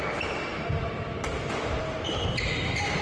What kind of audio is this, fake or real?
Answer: real